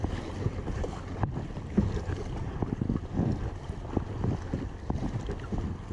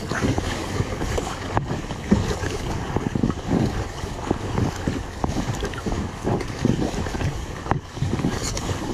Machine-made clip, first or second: second